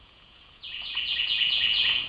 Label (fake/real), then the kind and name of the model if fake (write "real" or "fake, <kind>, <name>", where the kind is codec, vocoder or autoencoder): fake, vocoder, Vocos